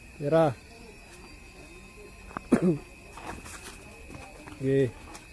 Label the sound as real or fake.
real